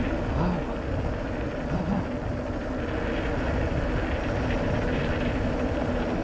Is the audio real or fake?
real